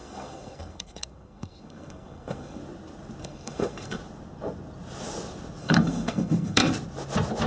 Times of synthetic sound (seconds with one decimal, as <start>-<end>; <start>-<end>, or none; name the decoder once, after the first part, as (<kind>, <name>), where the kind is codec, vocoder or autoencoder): 0.0-2.6 (codec, SNAC); 3.2-4.0; 5.6-6.6